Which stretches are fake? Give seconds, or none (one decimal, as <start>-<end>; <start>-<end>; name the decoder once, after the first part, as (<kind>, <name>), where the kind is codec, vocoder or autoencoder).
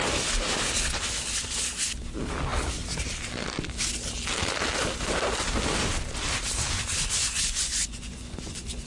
7.2-8.9 (vocoder, Vocos)